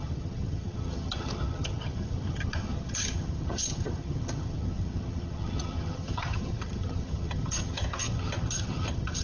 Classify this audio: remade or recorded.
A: remade